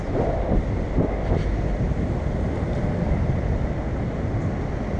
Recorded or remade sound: recorded